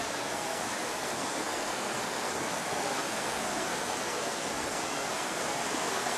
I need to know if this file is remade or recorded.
remade